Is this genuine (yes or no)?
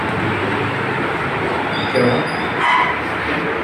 yes